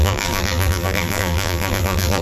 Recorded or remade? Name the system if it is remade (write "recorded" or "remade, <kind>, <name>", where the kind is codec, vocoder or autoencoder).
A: remade, vocoder, BigVGAN v2